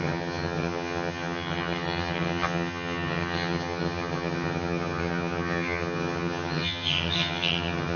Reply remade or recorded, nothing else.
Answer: remade